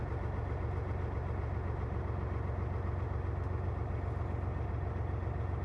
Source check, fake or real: real